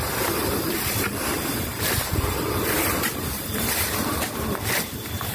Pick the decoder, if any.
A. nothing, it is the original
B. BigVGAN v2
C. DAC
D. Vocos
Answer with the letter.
B